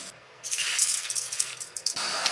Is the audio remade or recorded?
remade